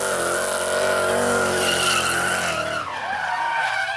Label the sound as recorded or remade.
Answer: recorded